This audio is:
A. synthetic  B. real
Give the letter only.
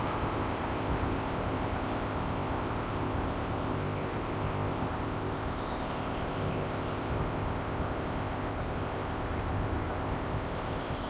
A